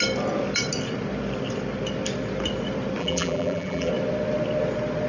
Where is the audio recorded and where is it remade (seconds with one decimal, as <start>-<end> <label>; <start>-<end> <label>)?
0.0-3.0 recorded; 3.0-3.9 remade; 3.9-5.1 recorded

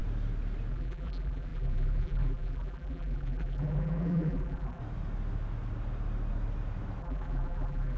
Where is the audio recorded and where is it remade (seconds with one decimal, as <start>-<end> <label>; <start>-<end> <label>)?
0.0-0.7 recorded; 0.7-4.8 remade; 4.8-7.0 recorded; 7.0-8.0 remade

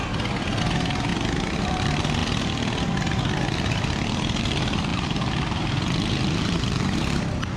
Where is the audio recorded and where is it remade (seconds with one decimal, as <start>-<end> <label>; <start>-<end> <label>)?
0.0-0.6 recorded; 0.6-1.1 remade; 1.1-1.6 recorded; 1.6-2.2 remade; 2.2-4.4 recorded; 4.4-7.6 remade

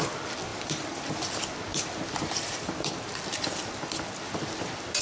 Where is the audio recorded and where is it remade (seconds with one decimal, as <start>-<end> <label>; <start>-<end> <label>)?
0.0-0.5 recorded; 0.5-1.1 remade; 1.1-1.7 recorded; 1.7-2.9 remade; 2.9-3.3 recorded; 3.3-4.2 remade; 4.2-5.0 recorded

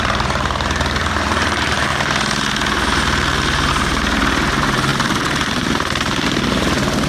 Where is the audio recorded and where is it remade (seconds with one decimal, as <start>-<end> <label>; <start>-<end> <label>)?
0.0-1.9 remade; 1.9-3.7 recorded; 3.7-7.1 remade